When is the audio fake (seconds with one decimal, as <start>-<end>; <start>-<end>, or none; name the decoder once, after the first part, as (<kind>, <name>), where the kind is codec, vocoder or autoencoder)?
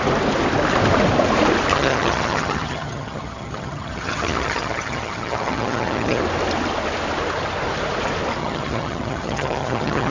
1.7-6.2 (vocoder, HiFi-GAN); 8.4-10.1